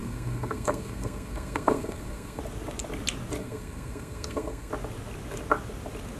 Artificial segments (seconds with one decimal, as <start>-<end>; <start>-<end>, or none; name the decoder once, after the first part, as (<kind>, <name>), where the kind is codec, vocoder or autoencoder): 0.0-2.4 (codec, SNAC); 3.4-4.7